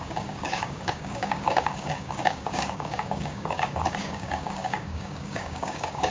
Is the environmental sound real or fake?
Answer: fake